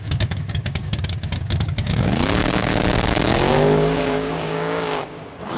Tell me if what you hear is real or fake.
fake